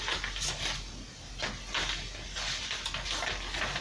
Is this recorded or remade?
recorded